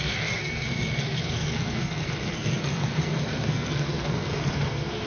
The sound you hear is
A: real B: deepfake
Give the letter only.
B